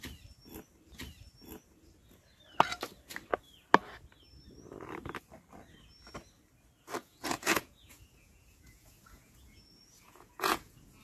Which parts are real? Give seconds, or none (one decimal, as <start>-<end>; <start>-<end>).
0.0-7.0